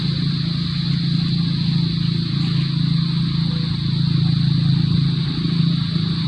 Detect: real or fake real